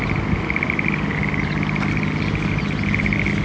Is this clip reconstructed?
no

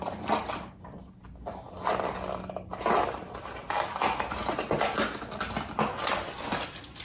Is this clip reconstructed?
no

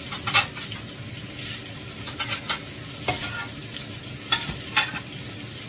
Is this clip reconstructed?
no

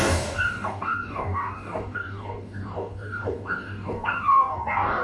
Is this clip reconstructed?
yes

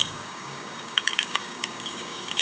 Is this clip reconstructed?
yes